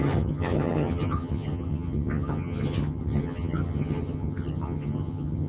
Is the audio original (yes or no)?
no